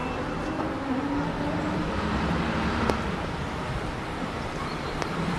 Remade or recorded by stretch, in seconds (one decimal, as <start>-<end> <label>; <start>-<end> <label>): 0.0-3.1 recorded; 3.1-5.4 remade